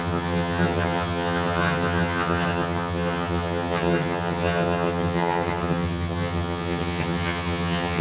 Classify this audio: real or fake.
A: fake